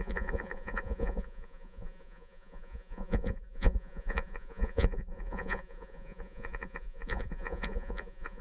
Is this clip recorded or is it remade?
remade